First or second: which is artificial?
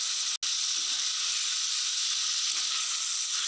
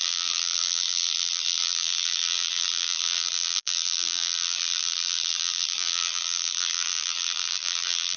second